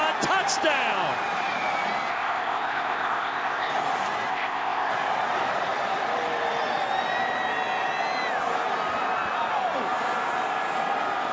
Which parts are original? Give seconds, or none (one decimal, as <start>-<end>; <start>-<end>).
0.0-2.1; 3.7-4.3; 4.9-11.3